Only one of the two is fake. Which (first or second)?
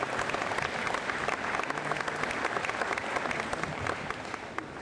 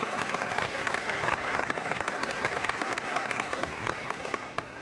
second